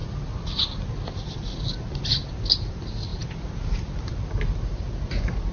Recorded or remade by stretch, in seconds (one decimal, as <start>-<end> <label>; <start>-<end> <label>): 0.0-5.5 recorded